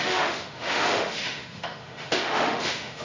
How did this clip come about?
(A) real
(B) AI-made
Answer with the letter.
B